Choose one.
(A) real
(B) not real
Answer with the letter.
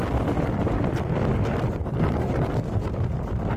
B